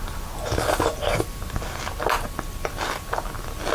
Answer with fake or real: real